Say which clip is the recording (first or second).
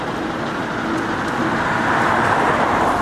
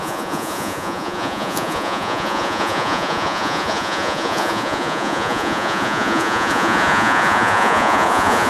first